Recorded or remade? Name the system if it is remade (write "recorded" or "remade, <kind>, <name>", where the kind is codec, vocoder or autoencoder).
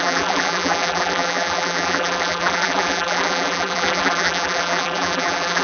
remade, vocoder, BigVGAN v2